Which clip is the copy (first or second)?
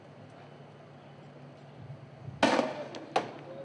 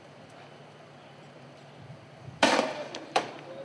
second